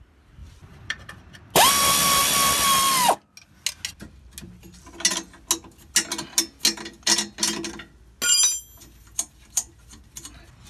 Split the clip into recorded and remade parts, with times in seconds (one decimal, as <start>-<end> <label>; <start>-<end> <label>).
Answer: 0.0-0.4 recorded; 0.4-1.1 remade; 1.1-10.7 recorded